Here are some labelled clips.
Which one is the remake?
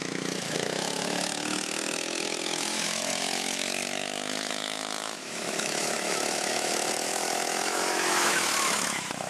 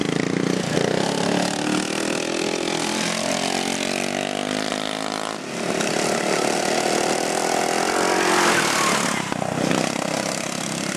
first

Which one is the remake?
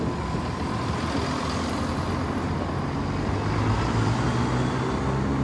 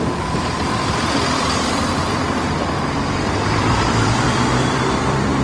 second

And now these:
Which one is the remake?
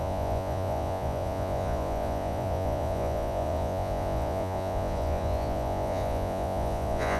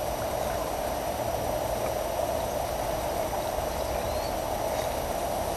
first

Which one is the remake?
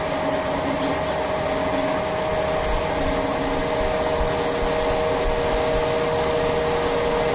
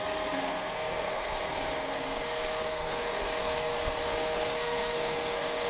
second